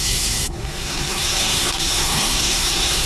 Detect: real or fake fake